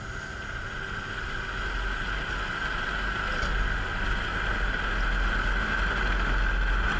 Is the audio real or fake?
real